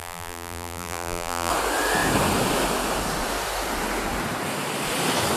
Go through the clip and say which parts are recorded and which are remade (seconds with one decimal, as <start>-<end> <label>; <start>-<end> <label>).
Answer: 0.0-1.5 remade; 1.5-5.4 recorded